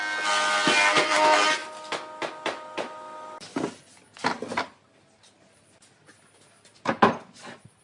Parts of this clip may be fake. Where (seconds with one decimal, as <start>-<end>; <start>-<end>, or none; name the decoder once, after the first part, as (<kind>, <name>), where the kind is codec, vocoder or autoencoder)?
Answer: none